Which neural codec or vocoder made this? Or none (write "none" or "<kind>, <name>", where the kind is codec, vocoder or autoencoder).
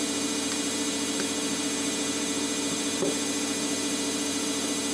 none